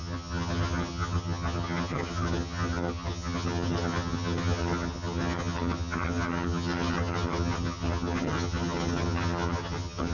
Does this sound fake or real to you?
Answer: fake